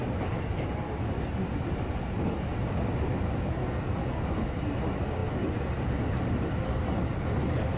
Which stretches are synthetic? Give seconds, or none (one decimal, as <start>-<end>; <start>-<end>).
none

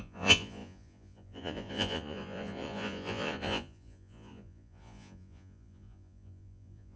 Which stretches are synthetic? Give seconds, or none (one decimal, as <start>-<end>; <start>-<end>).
0.0-7.0

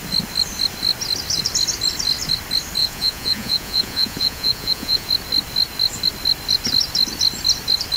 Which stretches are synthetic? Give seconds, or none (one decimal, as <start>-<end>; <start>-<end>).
2.8-5.1